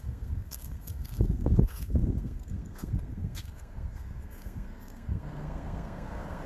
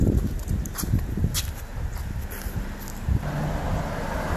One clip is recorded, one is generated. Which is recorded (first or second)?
second